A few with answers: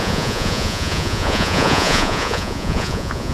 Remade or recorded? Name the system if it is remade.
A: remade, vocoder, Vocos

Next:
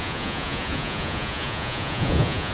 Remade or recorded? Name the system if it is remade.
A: remade, vocoder, Vocos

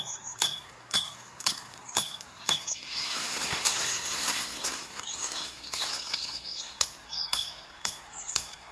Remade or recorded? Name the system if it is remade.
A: remade, codec, SNAC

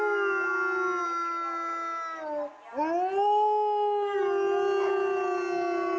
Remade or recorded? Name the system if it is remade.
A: recorded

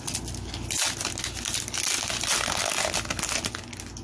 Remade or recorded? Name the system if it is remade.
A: recorded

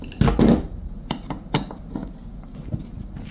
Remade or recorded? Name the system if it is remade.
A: recorded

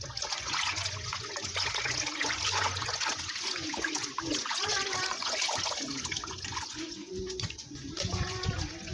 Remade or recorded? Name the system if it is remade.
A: remade, vocoder, Vocos